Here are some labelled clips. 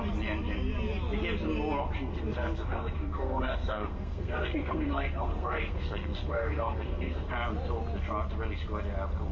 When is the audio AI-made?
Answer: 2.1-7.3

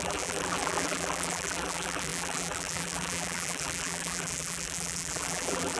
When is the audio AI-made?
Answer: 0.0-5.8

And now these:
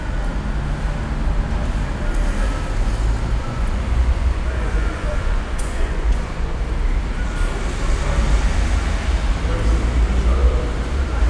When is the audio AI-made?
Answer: 3.4-6.6